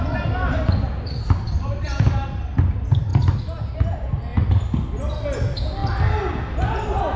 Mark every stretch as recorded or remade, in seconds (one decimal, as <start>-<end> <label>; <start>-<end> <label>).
0.0-7.2 recorded